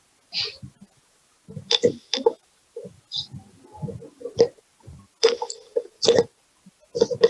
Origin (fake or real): real